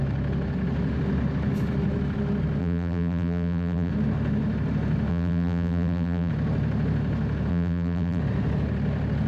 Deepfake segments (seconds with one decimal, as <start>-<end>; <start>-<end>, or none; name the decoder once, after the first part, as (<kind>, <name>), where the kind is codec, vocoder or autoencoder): 2.6-3.9 (vocoder, BigVGAN v2); 5.1-6.3; 7.5-8.2